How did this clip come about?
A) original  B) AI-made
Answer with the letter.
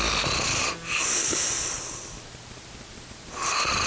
A